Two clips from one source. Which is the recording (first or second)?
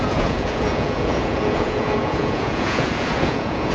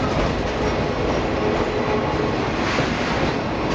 second